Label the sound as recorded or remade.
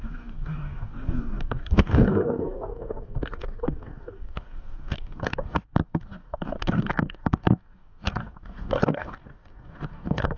remade